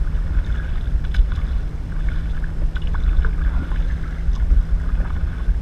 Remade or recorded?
recorded